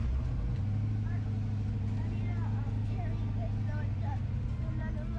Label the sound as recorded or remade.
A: recorded